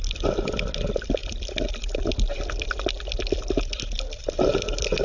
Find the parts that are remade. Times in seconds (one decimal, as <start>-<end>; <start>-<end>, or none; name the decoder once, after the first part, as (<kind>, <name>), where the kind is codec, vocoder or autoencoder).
none